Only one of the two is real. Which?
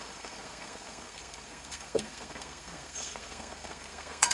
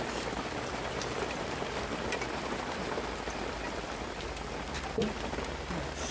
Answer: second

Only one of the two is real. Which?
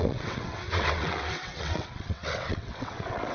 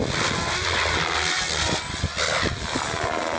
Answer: second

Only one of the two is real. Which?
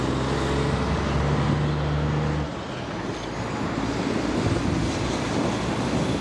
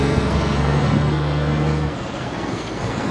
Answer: first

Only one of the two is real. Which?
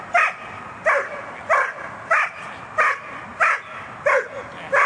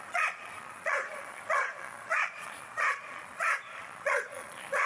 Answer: first